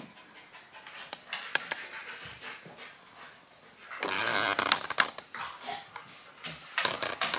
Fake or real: real